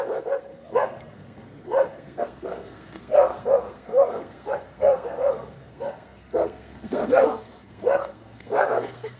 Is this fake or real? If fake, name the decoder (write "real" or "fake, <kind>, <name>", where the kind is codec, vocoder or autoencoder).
fake, codec, SNAC